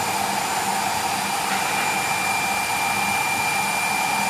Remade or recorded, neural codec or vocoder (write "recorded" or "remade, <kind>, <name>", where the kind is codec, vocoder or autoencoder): recorded